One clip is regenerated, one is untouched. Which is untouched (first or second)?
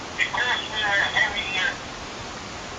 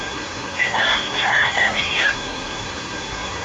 first